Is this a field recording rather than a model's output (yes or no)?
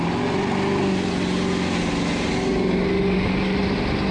yes